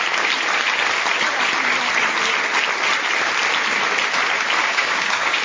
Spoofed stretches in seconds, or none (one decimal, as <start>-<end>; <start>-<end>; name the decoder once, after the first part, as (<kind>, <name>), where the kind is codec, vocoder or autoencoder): 4.6-5.4 (codec, DAC)